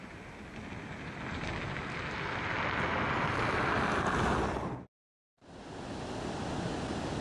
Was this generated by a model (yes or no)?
no